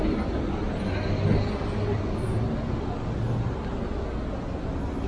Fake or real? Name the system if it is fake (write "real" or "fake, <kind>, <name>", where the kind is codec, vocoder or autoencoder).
real